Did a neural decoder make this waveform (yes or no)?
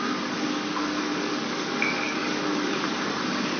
yes